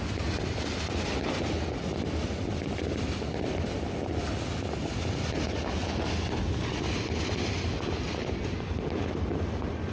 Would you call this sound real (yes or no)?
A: yes